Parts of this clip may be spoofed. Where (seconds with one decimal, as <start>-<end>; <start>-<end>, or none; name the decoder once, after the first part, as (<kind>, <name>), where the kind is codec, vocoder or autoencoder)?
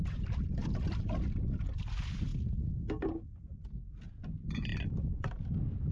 none